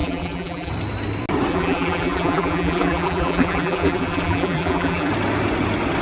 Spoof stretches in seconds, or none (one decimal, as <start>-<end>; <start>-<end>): 0.0-0.7; 1.5-5.1